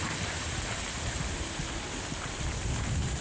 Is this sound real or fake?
real